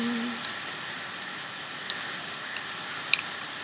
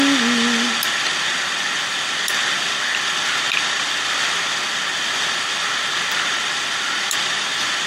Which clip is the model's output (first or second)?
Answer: first